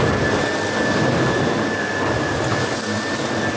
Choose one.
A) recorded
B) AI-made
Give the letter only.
A